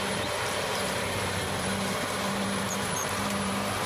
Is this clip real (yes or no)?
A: no